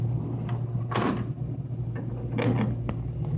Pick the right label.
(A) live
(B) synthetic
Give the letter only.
A